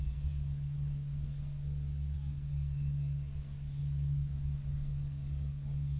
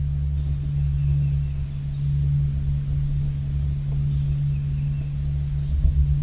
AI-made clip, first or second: first